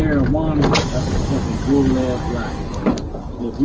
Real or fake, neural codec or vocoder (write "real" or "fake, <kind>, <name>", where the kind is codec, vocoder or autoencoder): real